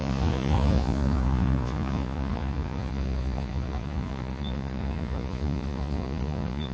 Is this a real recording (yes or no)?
no